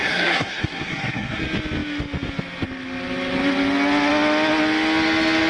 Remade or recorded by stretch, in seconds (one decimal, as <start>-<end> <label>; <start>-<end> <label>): 0.0-1.4 remade; 1.4-5.5 recorded

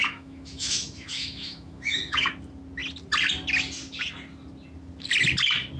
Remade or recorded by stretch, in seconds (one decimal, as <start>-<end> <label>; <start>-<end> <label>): 0.0-2.3 remade; 2.3-5.8 recorded

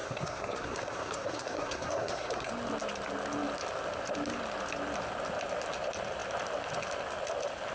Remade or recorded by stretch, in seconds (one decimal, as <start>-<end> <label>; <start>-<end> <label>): 0.0-2.5 remade; 2.5-7.7 recorded

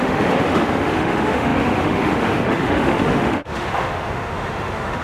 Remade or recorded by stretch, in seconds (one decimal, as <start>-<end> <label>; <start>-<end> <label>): 0.0-5.0 remade

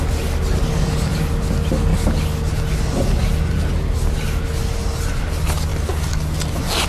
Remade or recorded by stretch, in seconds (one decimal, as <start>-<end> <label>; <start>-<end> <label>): 0.0-6.9 recorded

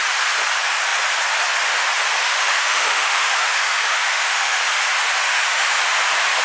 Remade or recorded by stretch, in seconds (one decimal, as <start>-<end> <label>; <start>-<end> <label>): 0.0-2.2 recorded; 2.2-4.6 remade; 4.6-5.2 recorded; 5.2-5.8 remade; 5.8-6.4 recorded

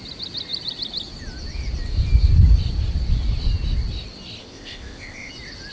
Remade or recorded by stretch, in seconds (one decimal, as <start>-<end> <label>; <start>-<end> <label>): 0.0-4.4 recorded; 4.4-5.3 remade; 5.3-5.7 recorded

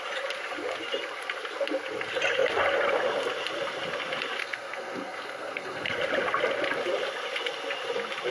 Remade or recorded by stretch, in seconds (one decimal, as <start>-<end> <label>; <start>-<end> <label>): 0.0-4.4 recorded; 4.4-5.9 remade; 5.9-8.3 recorded